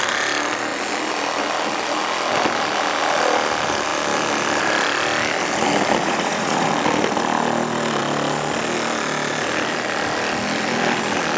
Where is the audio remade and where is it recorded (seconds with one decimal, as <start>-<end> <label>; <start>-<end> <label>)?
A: 0.0-6.0 recorded; 6.0-6.7 remade; 6.7-11.4 recorded